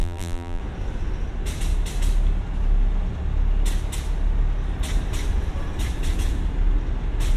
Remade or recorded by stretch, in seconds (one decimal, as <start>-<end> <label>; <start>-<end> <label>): 0.0-0.6 remade; 0.6-7.4 recorded